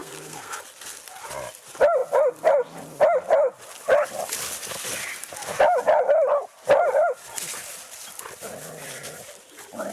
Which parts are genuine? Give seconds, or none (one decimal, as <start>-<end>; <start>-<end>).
0.6-9.9